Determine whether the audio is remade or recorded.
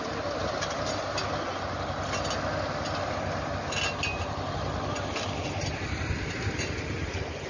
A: recorded